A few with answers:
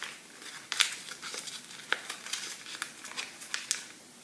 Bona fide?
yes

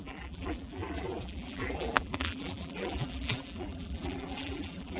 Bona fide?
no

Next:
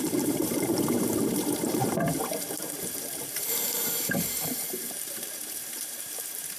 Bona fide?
no